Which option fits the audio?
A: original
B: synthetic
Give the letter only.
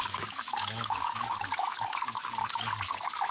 B